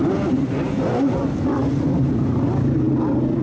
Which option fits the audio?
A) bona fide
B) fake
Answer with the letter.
A